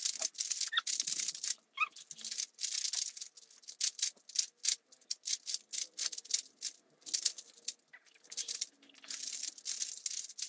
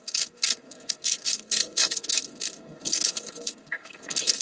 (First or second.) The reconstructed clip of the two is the second